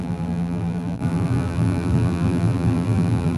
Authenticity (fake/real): fake